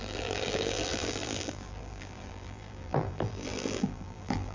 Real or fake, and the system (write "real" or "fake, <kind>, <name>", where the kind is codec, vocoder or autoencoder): fake, vocoder, BigVGAN v2